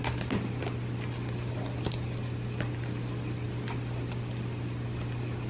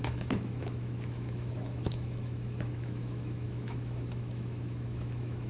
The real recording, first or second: first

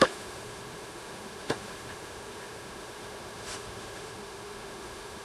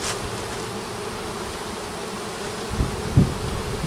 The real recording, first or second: second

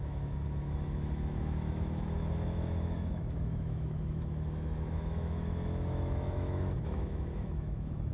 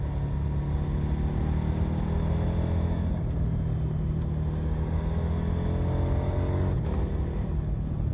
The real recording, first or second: second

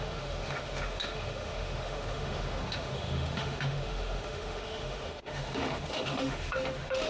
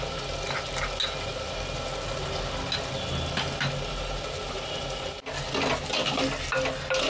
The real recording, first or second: second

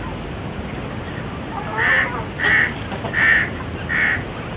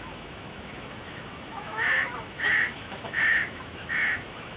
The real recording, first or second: first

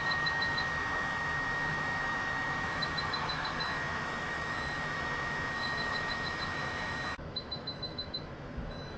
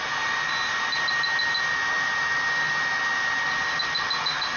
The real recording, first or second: second